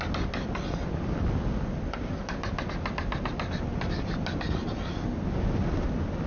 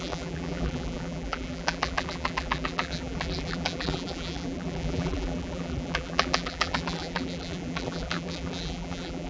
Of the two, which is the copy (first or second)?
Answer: second